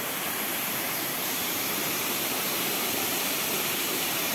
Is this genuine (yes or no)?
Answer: no